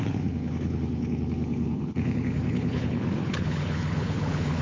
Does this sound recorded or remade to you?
remade